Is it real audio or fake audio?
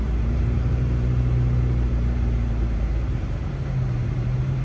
fake